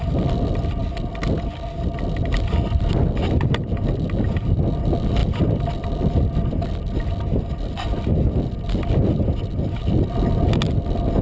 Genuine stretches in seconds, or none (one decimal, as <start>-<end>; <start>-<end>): 0.0-11.2